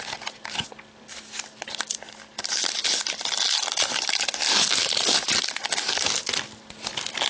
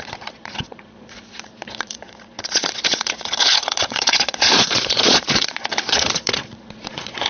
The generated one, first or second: second